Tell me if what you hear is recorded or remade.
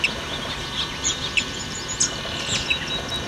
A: recorded